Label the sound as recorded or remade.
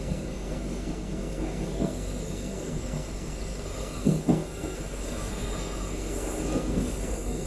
remade